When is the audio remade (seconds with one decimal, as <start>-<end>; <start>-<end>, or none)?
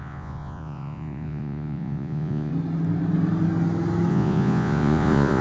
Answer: 0.0-2.5; 4.1-5.4